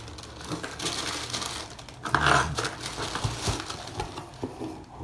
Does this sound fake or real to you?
real